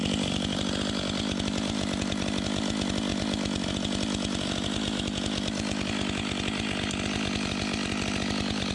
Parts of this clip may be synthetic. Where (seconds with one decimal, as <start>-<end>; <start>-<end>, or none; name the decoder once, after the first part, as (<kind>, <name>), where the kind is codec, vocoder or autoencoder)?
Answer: none